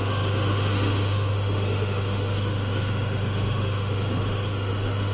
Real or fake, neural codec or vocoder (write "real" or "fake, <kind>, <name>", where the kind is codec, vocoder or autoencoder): fake, autoencoder, DAC-VAE